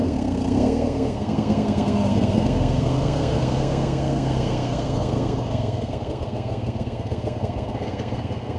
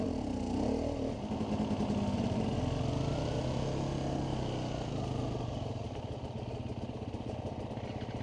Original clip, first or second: second